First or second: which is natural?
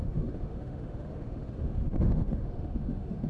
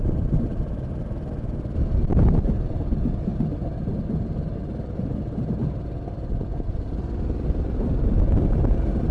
second